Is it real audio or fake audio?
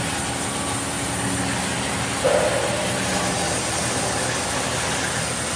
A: real